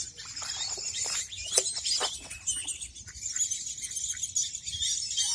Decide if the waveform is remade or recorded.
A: recorded